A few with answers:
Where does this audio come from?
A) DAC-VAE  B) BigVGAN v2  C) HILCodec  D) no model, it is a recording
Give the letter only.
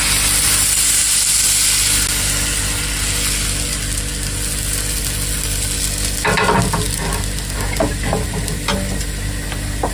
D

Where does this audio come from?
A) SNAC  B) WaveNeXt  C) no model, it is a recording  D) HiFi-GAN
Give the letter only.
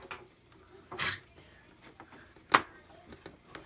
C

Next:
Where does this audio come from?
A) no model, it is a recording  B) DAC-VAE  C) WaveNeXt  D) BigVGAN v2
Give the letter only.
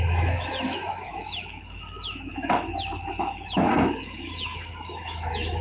B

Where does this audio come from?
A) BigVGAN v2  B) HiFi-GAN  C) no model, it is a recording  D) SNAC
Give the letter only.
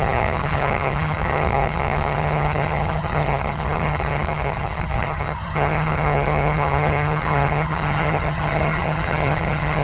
B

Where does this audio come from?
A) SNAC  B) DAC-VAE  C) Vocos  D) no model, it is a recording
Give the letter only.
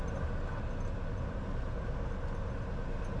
D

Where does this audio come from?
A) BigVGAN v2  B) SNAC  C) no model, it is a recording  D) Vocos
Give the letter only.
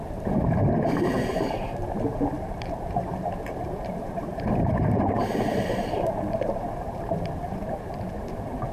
A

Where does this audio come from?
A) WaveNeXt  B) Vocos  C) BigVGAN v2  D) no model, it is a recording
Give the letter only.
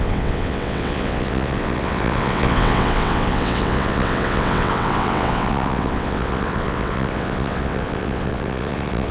A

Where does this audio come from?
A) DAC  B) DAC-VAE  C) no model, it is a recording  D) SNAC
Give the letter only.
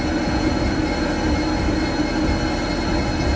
C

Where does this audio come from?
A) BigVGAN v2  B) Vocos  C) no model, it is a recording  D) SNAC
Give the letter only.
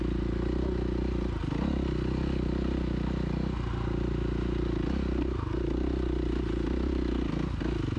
C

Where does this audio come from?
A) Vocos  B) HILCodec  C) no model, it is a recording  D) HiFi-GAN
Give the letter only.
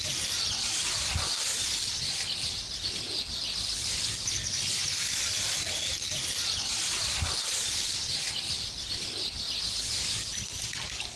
C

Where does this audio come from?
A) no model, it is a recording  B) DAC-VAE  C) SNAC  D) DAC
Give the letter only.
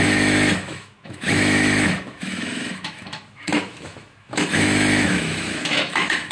B